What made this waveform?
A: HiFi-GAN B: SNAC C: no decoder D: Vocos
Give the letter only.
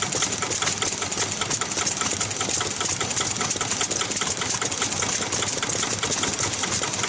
C